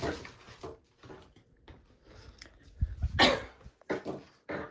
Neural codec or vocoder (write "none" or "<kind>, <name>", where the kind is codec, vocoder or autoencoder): none